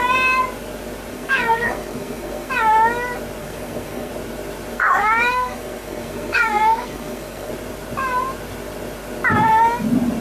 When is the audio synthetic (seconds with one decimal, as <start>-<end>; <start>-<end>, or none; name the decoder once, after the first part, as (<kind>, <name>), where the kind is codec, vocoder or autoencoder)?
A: 1.1-2.5 (codec, SNAC); 3.4-4.1; 4.7-7.5